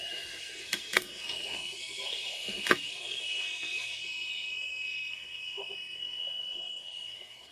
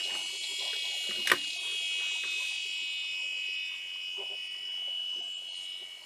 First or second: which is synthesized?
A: first